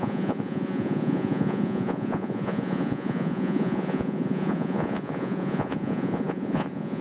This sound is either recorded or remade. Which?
remade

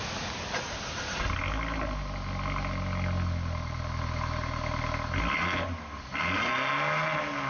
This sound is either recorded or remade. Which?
recorded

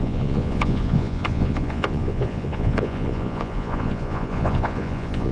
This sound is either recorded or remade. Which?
remade